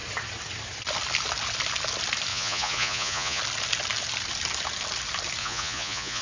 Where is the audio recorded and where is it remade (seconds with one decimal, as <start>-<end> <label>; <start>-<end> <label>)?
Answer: 0.0-2.3 recorded; 2.3-3.4 remade; 3.4-5.4 recorded; 5.4-6.2 remade